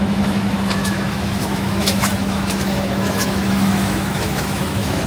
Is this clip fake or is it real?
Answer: fake